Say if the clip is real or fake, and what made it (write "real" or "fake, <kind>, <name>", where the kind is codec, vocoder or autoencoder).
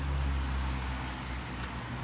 real